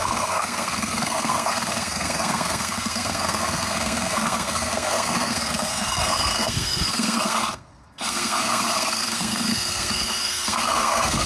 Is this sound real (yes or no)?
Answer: no